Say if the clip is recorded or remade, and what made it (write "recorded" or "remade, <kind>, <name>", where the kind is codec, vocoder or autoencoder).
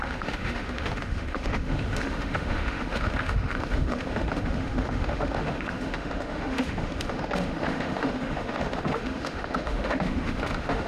remade, autoencoder, DAC-VAE